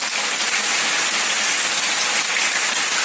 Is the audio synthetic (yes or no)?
no